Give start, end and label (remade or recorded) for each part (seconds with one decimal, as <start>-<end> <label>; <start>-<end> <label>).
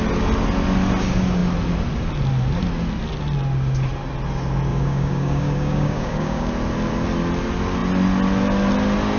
0.0-4.7 recorded; 4.7-6.5 remade; 6.5-9.2 recorded